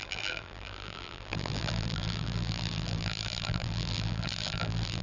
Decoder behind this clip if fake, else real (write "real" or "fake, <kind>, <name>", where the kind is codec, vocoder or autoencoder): fake, vocoder, BigVGAN v2